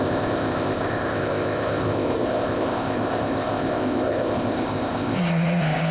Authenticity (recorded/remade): remade